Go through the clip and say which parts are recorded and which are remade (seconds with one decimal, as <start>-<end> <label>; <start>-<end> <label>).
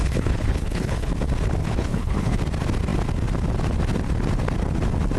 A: 0.0-1.1 remade; 1.1-1.6 recorded; 1.6-2.4 remade; 2.4-5.2 recorded